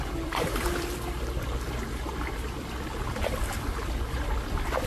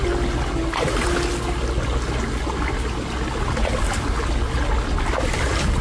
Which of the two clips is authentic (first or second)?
second